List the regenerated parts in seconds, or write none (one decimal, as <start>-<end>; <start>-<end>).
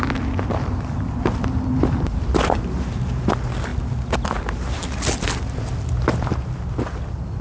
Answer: none